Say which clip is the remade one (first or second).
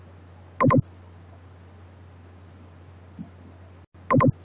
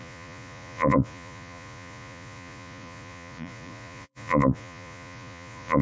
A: second